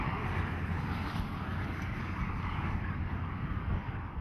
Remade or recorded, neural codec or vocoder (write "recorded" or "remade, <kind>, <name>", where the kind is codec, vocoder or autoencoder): remade, codec, DAC